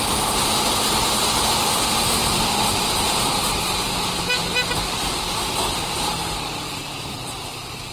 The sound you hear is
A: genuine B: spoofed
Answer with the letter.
B